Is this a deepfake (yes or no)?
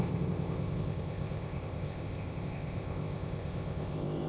yes